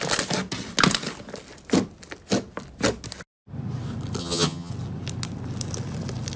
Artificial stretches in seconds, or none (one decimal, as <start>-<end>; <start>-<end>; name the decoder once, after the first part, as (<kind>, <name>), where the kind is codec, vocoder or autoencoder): 4.2-4.7 (vocoder, HiFi-GAN)

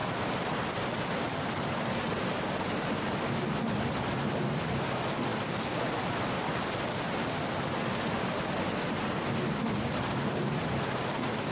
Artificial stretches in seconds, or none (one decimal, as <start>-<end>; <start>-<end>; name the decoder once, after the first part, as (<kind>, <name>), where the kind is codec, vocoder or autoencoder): none

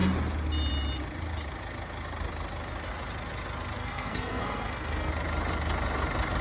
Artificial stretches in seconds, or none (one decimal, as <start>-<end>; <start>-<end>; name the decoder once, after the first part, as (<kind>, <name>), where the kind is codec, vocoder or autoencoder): 3.8-5.1 (codec, SNAC)

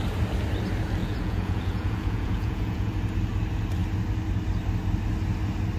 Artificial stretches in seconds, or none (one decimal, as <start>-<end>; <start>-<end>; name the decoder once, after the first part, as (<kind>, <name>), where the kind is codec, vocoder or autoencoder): 1.0-2.9 (vocoder, Vocos)

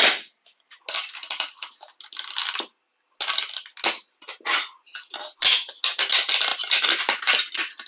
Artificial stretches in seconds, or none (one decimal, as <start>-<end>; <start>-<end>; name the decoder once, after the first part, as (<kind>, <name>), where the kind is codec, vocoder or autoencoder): none